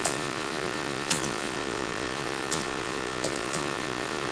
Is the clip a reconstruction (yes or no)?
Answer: yes